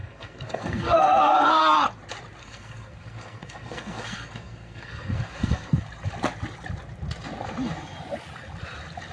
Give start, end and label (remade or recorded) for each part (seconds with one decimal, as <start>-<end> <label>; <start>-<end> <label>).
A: 0.0-1.6 remade; 1.6-2.4 recorded; 2.4-5.8 remade; 5.8-9.1 recorded